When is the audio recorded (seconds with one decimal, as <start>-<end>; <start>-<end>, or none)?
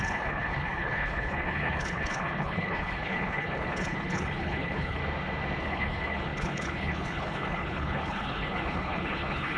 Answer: 5.0-5.6